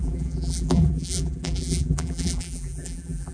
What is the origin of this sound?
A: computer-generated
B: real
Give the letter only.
A